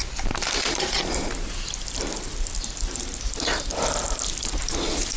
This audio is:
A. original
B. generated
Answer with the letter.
A